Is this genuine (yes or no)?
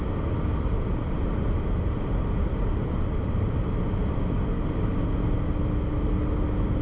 yes